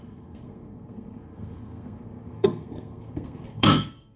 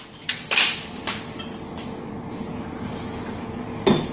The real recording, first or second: second